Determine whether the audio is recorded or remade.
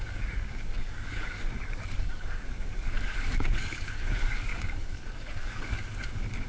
remade